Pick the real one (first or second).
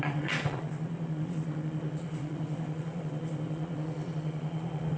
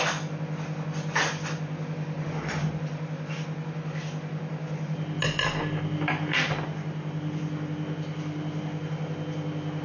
second